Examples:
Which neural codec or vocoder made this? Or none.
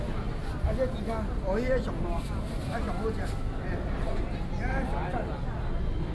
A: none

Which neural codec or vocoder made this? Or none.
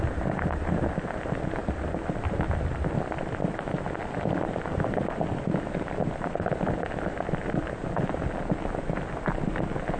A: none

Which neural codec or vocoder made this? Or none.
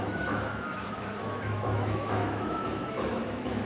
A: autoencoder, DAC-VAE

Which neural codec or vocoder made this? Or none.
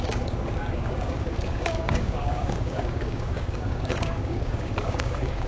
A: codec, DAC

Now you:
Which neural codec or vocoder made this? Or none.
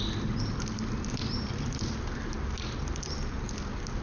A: none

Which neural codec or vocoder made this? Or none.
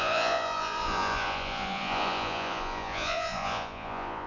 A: vocoder, Vocos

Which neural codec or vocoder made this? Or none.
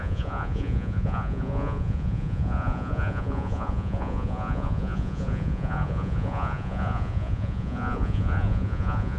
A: vocoder, Vocos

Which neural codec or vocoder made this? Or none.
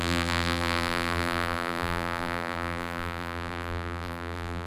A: vocoder, BigVGAN v2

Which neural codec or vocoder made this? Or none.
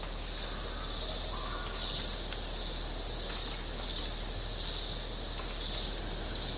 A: none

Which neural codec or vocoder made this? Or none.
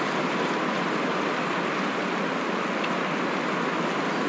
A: none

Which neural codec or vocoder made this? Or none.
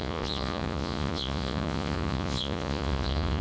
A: vocoder, Vocos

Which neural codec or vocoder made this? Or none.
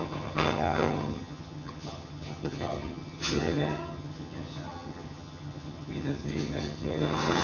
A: vocoder, HiFi-GAN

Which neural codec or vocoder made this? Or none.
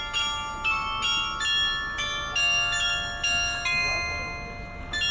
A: none